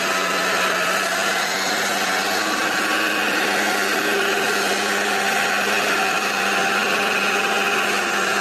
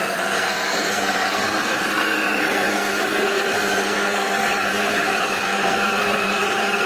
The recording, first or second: first